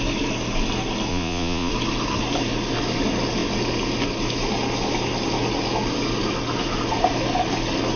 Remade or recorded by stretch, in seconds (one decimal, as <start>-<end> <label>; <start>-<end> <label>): 0.0-1.1 recorded; 1.1-1.7 remade; 1.7-8.0 recorded